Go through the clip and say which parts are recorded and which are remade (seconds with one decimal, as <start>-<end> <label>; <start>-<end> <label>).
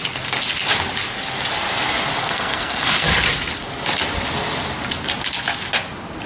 0.0-2.2 recorded; 2.2-3.1 remade; 3.1-6.3 recorded